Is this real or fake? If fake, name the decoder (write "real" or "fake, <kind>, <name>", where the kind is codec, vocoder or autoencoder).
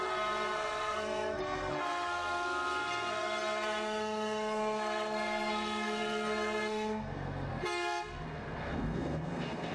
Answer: fake, codec, SNAC